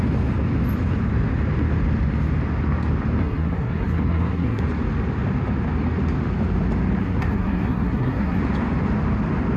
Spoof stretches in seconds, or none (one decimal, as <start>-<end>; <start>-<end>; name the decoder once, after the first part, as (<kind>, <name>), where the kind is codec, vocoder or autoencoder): 3.2-4.6 (codec, SNAC); 7.0-8.4